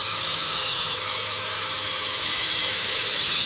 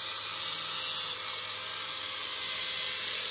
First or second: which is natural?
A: second